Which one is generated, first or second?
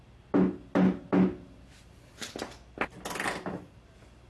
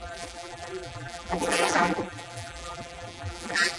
second